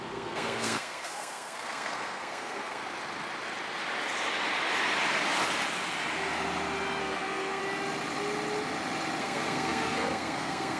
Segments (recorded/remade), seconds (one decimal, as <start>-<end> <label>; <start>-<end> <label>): 0.0-2.8 remade; 2.8-7.0 recorded; 7.0-7.6 remade; 7.6-9.2 recorded; 9.2-10.8 remade